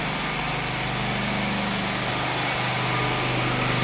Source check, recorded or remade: recorded